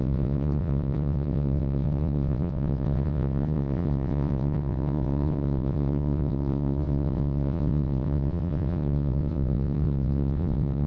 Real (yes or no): no